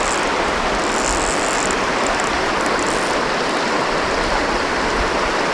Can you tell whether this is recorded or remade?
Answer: recorded